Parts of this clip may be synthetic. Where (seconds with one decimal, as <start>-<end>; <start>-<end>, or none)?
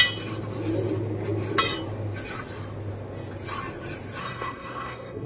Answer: 4.2-5.3